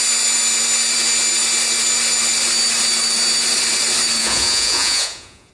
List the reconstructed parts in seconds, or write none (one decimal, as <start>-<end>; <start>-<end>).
4.2-5.5